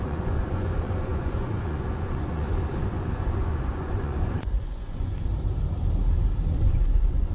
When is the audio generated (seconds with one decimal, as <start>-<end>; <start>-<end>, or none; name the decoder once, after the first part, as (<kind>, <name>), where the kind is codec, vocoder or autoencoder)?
0.0-5.3 (vocoder, Vocos); 6.5-7.3